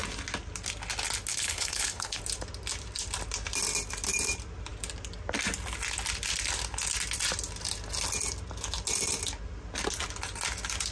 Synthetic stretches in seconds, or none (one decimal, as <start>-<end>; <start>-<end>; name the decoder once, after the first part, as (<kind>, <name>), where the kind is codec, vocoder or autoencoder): 1.3-2.2 (codec, HILCodec)